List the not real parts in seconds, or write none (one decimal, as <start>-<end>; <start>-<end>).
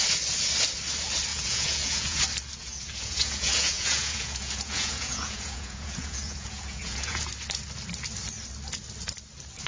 1.3-2.2; 2.6-7.3